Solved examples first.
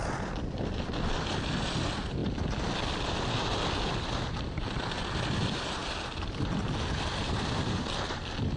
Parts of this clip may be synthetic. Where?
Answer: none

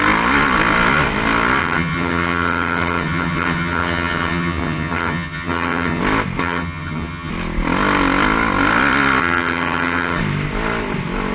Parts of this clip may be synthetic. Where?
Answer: 1.6-6.0 (vocoder, HiFi-GAN); 6.4-7.3; 9.2-10.2

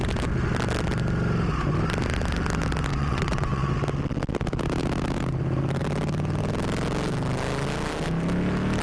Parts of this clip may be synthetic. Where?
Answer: 2.9-3.7 (vocoder, WaveNeXt)